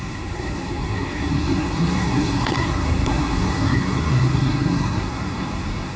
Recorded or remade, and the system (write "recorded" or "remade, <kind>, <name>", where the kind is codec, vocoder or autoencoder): remade, codec, SNAC